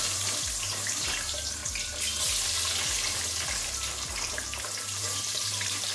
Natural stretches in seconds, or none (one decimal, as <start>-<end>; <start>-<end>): 1.6-4.3